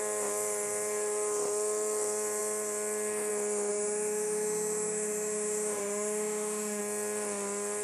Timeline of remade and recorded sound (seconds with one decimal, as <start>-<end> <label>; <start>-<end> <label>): 0.0-3.7 recorded; 3.7-6.8 remade; 6.8-7.8 recorded